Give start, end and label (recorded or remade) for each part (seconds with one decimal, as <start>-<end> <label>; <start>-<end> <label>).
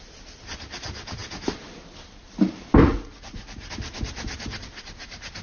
0.0-2.8 recorded; 2.8-3.7 remade; 3.7-5.4 recorded